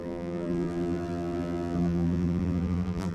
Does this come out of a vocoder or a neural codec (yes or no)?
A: yes